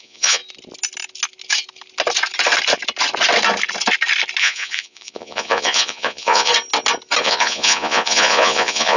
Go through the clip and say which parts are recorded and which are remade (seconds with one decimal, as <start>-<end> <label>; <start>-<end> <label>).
0.0-0.4 remade; 0.4-4.4 recorded; 4.4-6.5 remade; 6.5-7.2 recorded; 7.2-9.0 remade